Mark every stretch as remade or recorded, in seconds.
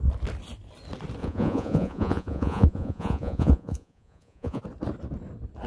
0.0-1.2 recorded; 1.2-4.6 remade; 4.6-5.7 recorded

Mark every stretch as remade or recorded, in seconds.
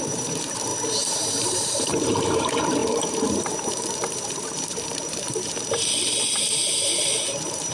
0.0-0.7 remade; 0.7-1.4 recorded; 1.4-7.7 remade